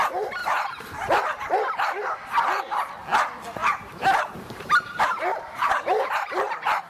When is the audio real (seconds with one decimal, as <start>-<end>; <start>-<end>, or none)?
0.0-0.4; 1.2-3.6